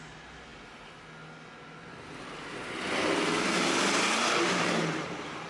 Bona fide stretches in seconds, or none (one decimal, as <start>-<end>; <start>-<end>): 0.0-4.2